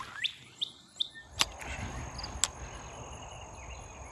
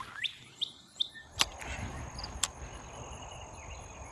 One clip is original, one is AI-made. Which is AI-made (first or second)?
second